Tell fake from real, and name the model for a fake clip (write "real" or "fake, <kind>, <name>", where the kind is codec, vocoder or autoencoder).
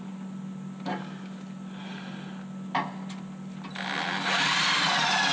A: real